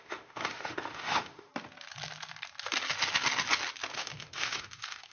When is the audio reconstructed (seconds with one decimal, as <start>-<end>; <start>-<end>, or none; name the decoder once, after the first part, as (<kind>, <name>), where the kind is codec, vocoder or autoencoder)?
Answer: 0.0-1.5 (autoencoder, DAC-VAE); 3.9-5.1